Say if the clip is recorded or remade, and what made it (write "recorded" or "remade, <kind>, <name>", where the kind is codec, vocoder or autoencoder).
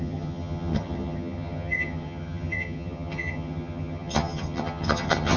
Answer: remade, vocoder, HiFi-GAN